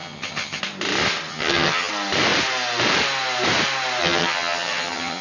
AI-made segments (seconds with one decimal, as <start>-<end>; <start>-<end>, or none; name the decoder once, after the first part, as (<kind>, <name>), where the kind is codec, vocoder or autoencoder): 0.0-0.6 (vocoder, HiFi-GAN); 1.3-1.9; 4.0-5.2